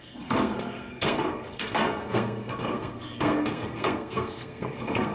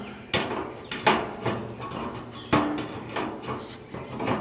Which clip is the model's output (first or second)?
first